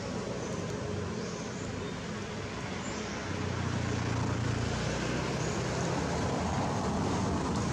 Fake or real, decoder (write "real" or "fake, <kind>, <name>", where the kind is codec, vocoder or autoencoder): real